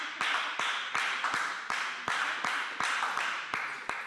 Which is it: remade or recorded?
recorded